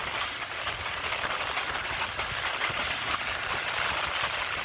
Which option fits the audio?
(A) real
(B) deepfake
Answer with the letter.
A